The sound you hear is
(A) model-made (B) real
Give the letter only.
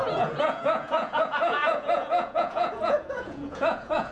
A